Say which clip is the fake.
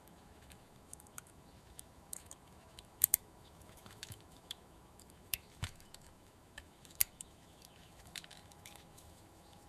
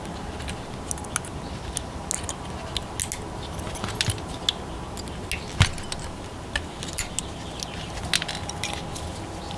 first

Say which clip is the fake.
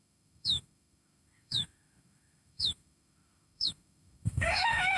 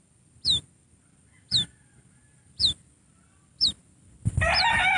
first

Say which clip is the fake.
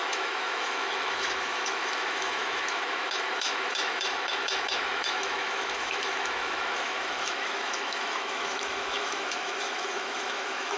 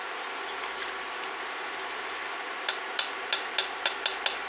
first